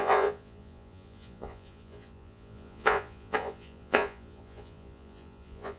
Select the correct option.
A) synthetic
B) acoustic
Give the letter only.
A